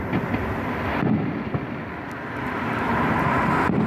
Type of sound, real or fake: real